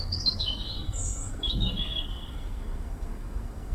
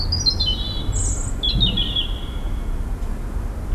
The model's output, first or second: first